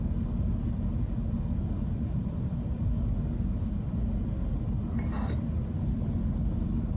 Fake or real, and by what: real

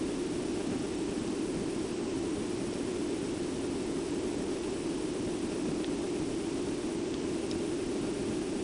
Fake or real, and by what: real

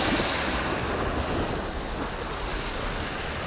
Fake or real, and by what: real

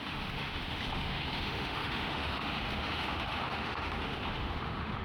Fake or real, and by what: fake, autoencoder, DAC-VAE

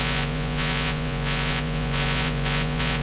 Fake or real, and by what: fake, vocoder, Vocos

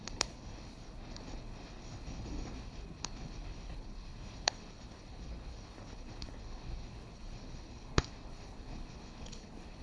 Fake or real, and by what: fake, codec, HILCodec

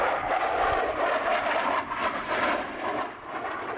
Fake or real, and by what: fake, vocoder, BigVGAN v2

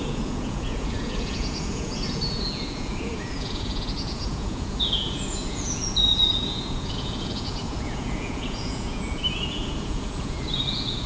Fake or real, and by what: fake, vocoder, Vocos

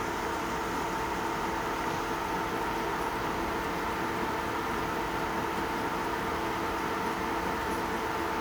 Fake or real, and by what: real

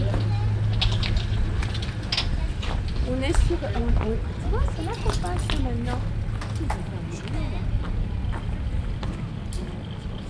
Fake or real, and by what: real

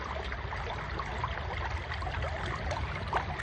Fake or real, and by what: real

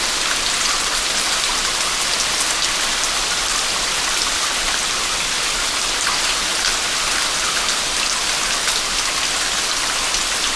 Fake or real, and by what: real